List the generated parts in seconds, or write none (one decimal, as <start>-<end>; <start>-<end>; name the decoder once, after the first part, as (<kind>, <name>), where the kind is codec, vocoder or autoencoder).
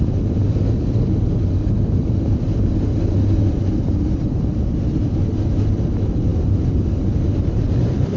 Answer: none